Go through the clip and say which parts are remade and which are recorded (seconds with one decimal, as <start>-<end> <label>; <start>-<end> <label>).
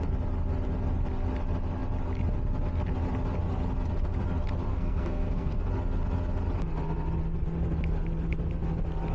0.0-4.7 recorded; 4.7-5.6 remade; 5.6-9.1 recorded